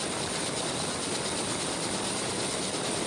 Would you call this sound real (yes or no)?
no